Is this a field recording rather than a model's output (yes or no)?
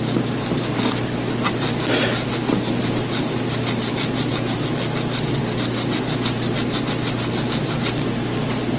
yes